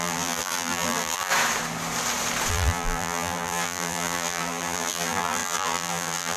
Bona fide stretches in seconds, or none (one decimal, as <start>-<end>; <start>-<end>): 1.3-2.5